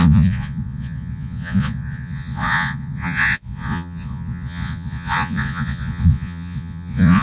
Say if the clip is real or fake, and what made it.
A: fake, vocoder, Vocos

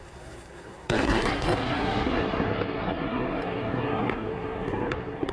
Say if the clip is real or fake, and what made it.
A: fake, codec, SNAC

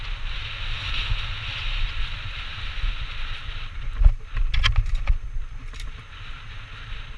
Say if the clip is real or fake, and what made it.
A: real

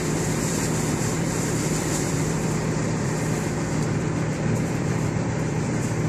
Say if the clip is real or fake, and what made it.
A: fake, vocoder, BigVGAN v2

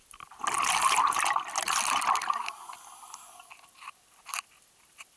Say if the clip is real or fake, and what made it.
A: real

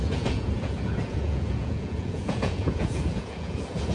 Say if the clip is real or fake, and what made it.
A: fake, vocoder, Vocos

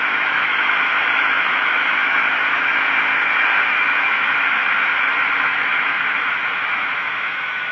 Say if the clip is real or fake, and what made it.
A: fake, autoencoder, DAC-VAE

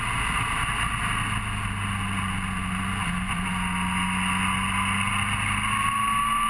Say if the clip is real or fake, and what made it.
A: real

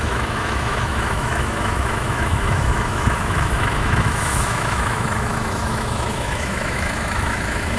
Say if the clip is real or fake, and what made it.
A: fake, autoencoder, DAC-VAE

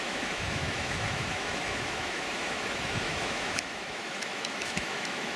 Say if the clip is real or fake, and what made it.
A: fake, autoencoder, DAC-VAE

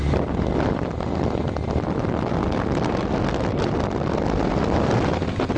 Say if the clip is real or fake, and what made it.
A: real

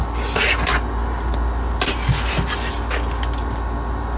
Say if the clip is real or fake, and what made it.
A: real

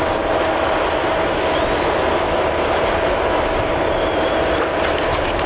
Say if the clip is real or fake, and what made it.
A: real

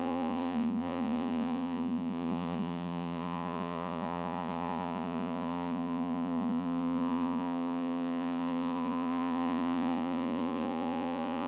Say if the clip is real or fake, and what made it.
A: fake, vocoder, Vocos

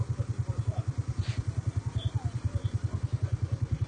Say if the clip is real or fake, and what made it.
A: real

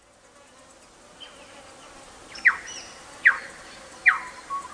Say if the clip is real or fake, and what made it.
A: real